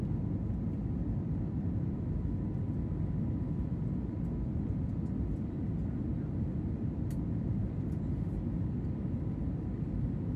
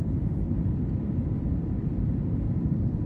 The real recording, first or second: first